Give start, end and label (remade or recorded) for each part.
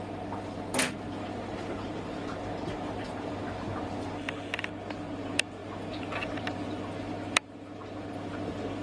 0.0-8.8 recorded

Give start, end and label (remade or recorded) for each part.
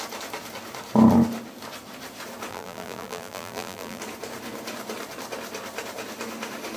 0.0-2.5 recorded; 2.5-4.0 remade; 4.0-6.8 recorded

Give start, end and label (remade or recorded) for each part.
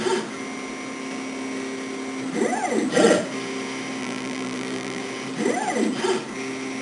0.0-4.0 recorded; 4.0-5.0 remade; 5.0-6.8 recorded